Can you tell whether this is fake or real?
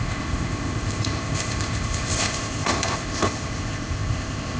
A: fake